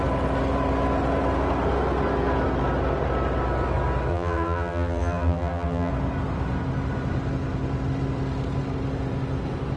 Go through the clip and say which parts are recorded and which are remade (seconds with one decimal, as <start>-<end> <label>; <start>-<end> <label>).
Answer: 0.0-4.1 recorded; 4.1-5.9 remade; 5.9-9.8 recorded